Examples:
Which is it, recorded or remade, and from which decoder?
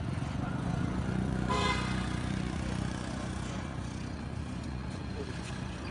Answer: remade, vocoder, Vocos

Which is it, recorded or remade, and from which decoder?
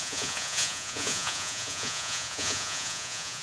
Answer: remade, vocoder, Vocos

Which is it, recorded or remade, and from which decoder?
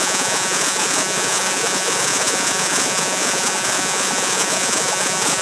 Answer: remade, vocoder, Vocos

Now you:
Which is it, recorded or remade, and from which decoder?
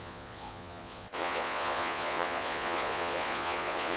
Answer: remade, vocoder, Vocos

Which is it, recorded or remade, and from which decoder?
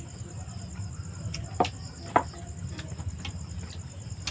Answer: recorded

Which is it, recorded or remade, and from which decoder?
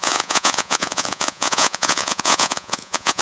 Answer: remade, vocoder, Vocos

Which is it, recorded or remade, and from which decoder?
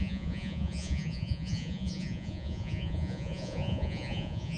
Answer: remade, vocoder, Vocos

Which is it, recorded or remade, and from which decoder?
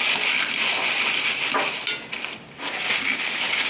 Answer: recorded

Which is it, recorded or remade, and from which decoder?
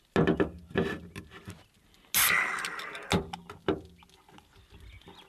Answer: recorded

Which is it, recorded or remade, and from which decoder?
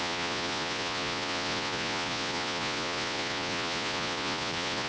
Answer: remade, vocoder, Vocos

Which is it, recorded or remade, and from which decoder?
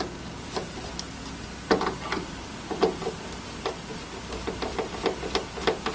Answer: recorded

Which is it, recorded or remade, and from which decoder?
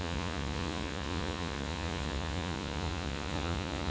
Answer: remade, vocoder, Vocos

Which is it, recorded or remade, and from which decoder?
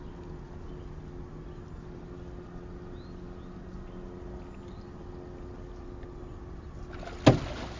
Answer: recorded